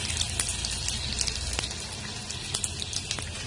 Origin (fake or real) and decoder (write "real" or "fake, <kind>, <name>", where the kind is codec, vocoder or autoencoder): real